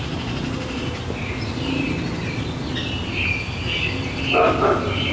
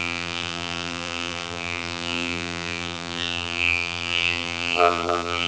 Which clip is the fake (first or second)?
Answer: second